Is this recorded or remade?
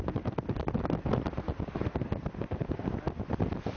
recorded